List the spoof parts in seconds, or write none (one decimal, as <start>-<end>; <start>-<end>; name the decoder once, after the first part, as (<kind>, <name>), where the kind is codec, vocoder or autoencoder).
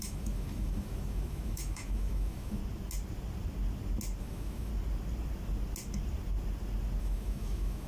0.0-2.6 (autoencoder, DAC-VAE); 4.2-4.7; 7.0-7.9